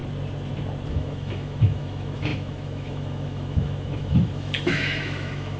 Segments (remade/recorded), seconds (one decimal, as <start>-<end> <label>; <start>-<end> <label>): 0.0-0.9 recorded; 0.9-5.6 remade